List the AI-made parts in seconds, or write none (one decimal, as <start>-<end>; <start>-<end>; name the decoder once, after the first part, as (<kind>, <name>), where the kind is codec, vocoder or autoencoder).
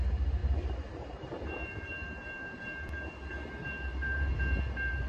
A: 0.0-5.1 (vocoder, BigVGAN v2)